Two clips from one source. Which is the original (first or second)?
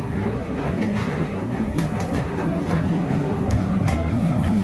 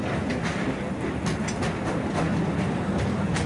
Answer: second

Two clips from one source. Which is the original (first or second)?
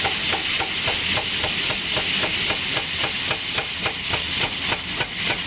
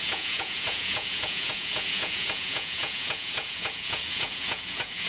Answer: first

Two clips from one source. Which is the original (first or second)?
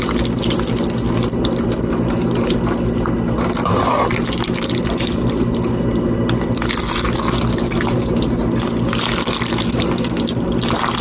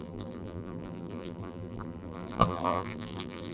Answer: first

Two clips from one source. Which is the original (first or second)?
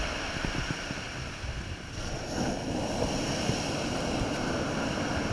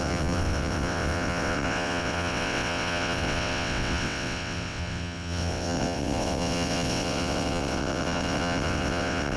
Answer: first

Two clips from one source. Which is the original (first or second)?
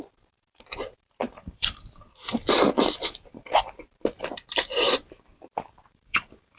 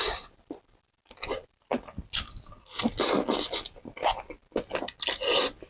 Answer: second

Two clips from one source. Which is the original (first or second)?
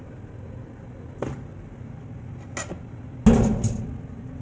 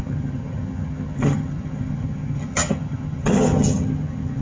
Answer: first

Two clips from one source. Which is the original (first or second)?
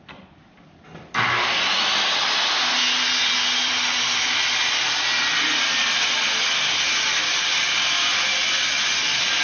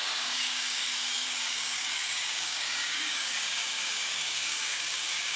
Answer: first